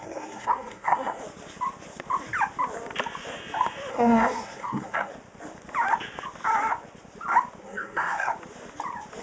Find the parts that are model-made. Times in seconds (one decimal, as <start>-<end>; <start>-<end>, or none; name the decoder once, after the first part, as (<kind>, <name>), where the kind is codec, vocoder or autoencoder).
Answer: 0.0-1.2 (codec, SNAC); 3.9-5.1; 7.6-8.3